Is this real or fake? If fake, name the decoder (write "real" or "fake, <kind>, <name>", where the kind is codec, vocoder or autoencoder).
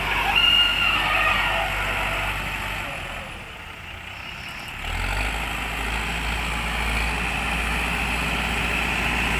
real